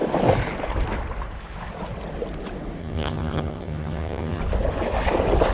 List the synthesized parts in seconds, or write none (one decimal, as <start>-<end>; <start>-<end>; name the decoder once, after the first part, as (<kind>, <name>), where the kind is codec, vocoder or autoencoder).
2.8-4.4 (vocoder, HiFi-GAN)